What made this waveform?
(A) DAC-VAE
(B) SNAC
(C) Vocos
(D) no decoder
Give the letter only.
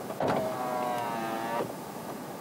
D